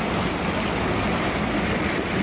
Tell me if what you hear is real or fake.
real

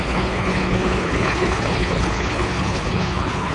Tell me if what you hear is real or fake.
fake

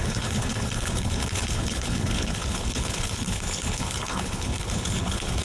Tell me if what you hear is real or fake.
fake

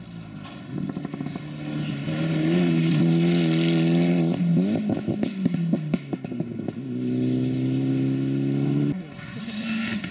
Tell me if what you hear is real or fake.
real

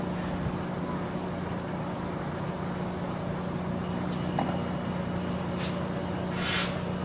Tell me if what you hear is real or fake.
real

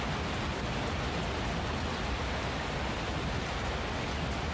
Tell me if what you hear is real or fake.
real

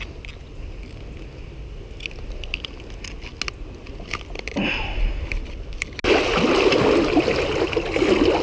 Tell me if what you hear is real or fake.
real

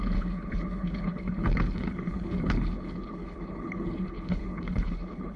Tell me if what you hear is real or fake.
fake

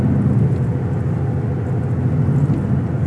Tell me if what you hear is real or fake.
real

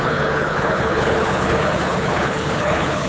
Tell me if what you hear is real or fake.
fake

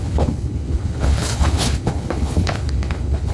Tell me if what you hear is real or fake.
fake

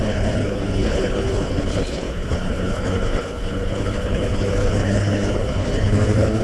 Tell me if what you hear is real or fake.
fake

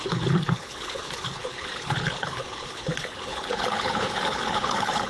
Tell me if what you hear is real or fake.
fake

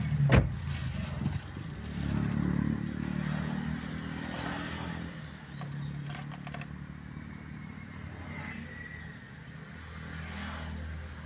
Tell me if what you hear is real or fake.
real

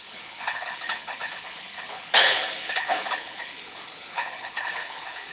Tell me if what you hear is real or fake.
fake